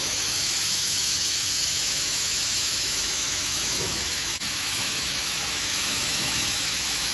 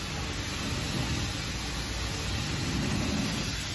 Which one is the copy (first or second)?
first